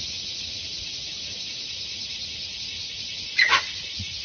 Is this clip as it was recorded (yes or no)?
no